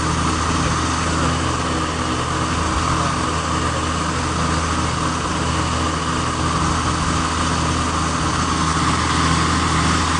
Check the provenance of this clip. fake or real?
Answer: real